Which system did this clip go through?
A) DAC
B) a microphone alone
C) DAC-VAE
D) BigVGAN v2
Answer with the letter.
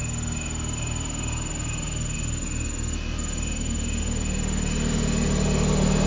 B